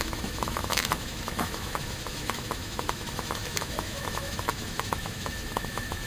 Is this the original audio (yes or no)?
no